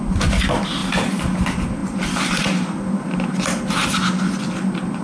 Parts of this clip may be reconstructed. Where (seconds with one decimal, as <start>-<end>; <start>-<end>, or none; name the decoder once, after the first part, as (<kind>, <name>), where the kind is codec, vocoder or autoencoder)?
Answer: none